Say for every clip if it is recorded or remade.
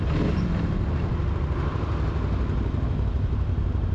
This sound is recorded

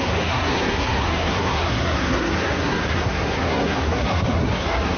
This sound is remade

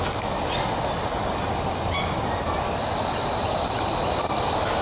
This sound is recorded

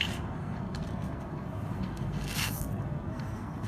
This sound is remade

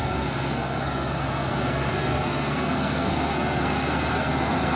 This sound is remade